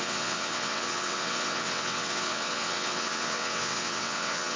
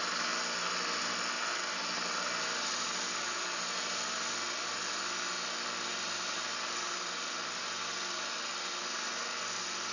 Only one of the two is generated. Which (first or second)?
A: first